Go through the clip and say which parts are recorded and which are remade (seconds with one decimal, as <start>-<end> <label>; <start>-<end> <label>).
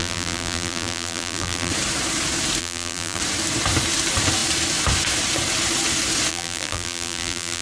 0.0-1.7 remade; 1.7-2.6 recorded; 2.6-3.2 remade; 3.2-6.3 recorded; 6.3-7.6 remade